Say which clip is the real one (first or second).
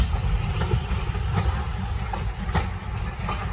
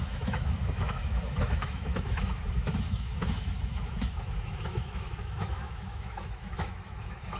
first